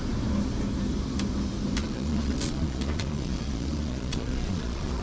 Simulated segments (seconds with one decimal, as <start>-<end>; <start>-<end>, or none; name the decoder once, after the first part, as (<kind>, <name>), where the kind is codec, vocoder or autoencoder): 1.8-5.0 (vocoder, Vocos)